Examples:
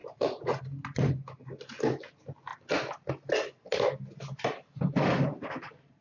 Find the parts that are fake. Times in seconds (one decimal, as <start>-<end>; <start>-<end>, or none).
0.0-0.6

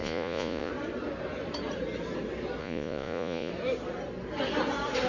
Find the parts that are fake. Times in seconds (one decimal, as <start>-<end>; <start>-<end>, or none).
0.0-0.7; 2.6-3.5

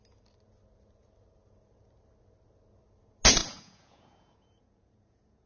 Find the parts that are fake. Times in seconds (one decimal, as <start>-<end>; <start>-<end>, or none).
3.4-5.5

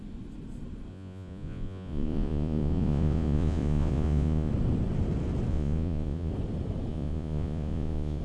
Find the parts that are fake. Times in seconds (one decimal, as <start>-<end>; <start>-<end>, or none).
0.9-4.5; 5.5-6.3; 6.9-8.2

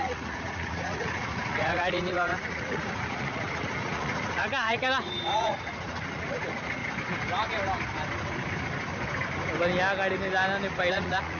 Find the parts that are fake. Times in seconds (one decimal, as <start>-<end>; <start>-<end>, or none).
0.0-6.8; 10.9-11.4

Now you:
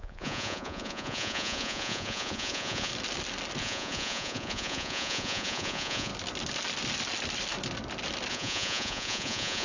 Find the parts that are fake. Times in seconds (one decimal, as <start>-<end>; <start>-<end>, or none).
0.0-2.9; 3.6-6.1; 8.3-9.6

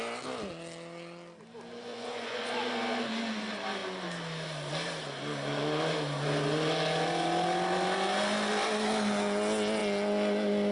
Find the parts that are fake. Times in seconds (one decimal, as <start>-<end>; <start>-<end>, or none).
1.9-2.5

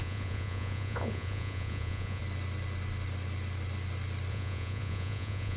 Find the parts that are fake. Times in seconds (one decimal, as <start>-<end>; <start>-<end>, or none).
0.0-2.2; 4.3-5.6